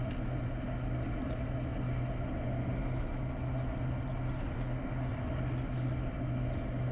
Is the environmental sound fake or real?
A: real